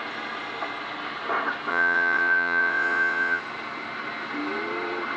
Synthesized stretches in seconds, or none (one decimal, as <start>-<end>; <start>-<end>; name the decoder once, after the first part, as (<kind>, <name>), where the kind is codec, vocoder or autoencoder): 1.7-3.4 (vocoder, WaveNeXt)